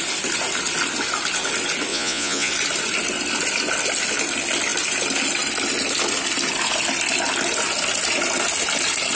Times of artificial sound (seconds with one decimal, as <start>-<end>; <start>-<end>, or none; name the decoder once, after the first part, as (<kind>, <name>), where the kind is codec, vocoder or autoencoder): 1.9-2.5 (vocoder, Vocos)